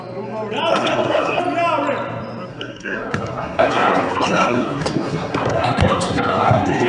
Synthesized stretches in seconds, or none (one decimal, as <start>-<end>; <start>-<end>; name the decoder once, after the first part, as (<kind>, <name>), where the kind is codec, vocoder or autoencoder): 0.7-1.4 (codec, SNAC); 2.5-6.9